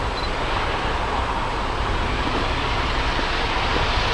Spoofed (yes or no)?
no